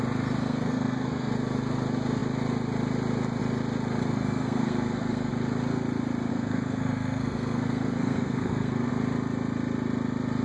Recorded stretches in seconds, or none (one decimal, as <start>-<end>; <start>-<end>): 0.0-0.4; 1.3-4.0; 5.3-6.3; 8.9-10.4